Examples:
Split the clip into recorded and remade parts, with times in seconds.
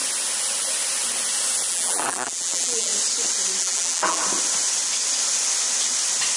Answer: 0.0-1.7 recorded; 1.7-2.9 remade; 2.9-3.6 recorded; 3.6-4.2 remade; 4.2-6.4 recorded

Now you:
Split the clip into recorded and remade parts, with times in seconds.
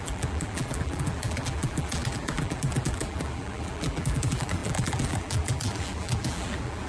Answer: 0.0-6.9 remade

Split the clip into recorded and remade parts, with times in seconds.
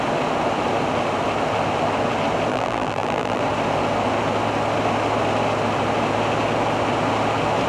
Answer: 0.0-2.5 recorded; 2.5-3.4 remade; 3.4-7.7 recorded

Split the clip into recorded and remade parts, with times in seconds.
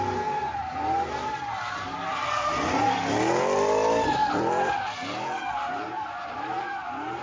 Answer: 0.0-4.2 recorded; 4.2-7.2 remade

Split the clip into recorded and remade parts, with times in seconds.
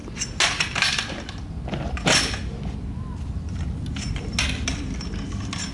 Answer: 0.0-5.7 recorded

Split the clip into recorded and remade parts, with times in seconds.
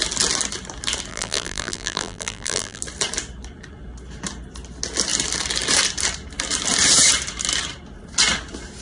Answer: 0.0-1.1 recorded; 1.1-2.8 remade; 2.8-8.8 recorded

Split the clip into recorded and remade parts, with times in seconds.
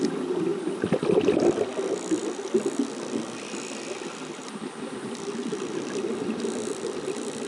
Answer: 0.0-7.5 recorded